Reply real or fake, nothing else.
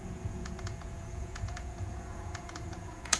fake